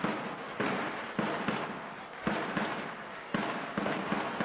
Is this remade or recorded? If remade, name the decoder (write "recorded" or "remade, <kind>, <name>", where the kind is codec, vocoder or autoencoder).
recorded